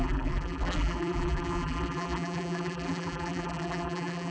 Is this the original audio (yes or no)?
no